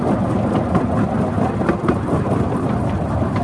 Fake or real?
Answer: real